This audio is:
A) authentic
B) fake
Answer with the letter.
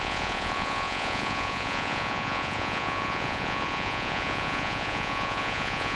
B